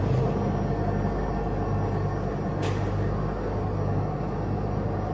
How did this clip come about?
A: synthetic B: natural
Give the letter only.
B